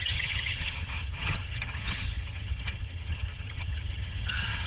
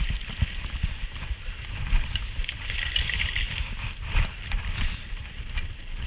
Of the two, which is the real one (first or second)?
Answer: second